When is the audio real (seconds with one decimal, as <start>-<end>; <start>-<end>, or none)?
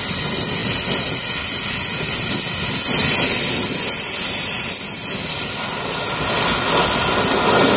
0.0-7.8